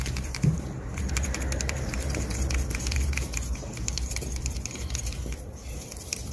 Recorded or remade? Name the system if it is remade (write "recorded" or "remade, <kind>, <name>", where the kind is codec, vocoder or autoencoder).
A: remade, vocoder, BigVGAN v2